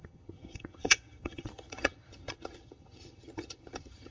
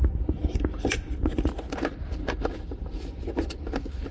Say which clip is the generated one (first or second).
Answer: first